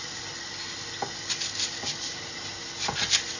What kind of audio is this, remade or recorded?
recorded